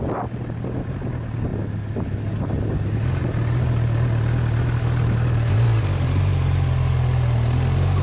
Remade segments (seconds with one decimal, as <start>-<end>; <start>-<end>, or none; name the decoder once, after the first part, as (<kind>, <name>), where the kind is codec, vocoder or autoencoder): none